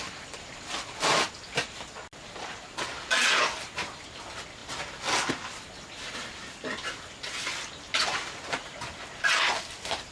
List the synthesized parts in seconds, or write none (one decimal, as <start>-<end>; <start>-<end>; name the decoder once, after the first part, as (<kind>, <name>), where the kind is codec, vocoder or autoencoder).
none